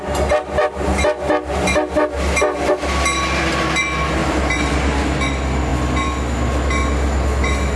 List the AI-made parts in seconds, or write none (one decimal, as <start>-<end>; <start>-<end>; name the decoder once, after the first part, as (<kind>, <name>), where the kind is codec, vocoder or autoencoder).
4.2-4.7 (vocoder, BigVGAN v2)